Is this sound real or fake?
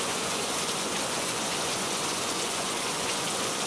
fake